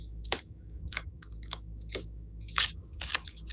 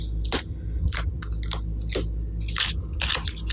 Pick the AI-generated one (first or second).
first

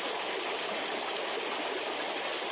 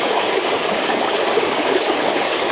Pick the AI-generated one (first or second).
second